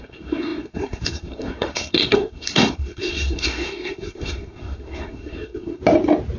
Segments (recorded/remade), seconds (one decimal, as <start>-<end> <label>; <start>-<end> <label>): 0.0-5.8 remade; 5.8-6.4 recorded